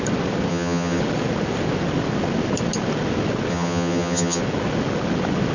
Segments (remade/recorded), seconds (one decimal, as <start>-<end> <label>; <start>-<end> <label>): 0.0-0.5 recorded; 0.5-1.0 remade; 1.0-3.5 recorded; 3.5-4.4 remade; 4.4-5.5 recorded